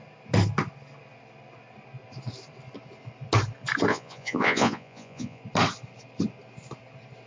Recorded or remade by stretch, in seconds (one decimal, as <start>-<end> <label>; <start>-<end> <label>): 0.0-3.9 recorded; 3.9-5.4 remade; 5.4-7.3 recorded

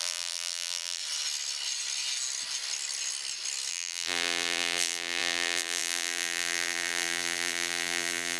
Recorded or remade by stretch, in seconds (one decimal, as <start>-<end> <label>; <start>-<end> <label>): 0.0-1.0 remade; 1.0-3.7 recorded; 3.7-8.4 remade

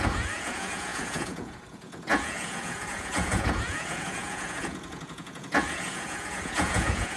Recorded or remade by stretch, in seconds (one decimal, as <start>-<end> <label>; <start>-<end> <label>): 0.0-7.2 remade

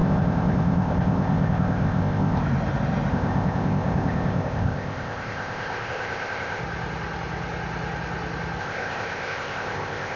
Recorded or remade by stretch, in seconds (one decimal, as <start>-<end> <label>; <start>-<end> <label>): 0.0-2.4 remade; 2.4-3.1 recorded; 3.1-6.6 remade; 6.6-8.6 recorded; 8.6-10.2 remade